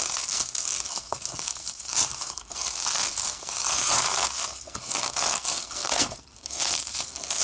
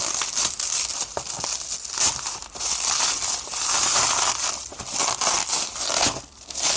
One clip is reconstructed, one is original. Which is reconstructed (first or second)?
first